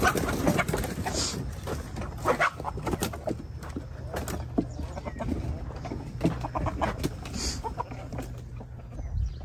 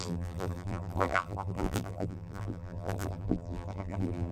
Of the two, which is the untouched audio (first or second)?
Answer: first